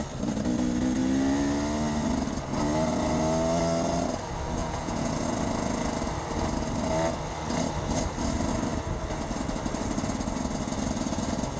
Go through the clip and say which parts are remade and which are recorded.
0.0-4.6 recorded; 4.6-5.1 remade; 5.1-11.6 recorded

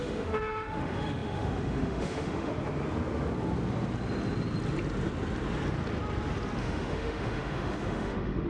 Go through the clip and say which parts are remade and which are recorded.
0.0-2.5 remade; 2.5-6.6 recorded; 6.6-8.5 remade

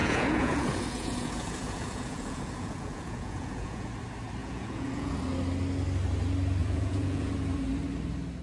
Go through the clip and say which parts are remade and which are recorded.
0.0-3.9 remade; 3.9-4.4 recorded; 4.4-5.1 remade; 5.1-6.6 recorded; 6.6-7.3 remade; 7.3-8.4 recorded

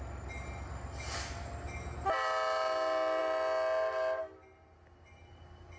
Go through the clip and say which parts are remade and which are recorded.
0.0-5.8 recorded